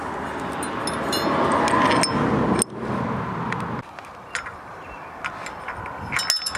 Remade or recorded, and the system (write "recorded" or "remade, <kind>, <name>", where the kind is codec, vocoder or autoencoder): recorded